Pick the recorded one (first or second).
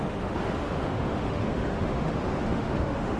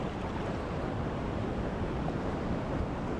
second